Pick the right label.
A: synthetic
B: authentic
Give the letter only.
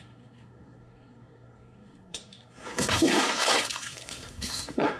A